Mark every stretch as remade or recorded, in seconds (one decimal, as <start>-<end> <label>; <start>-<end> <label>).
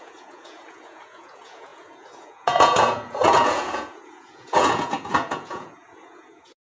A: 0.0-6.7 remade